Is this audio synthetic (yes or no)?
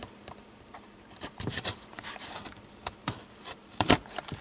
yes